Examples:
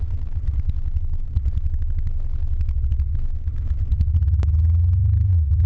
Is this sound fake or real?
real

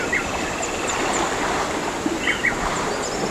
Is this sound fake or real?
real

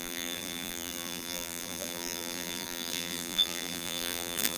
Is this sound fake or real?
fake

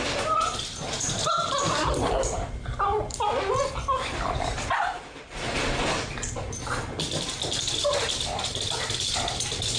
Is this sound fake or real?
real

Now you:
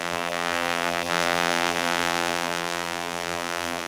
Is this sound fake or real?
fake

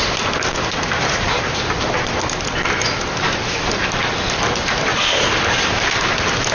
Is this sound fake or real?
real